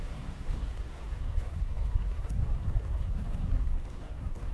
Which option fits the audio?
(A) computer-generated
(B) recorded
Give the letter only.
A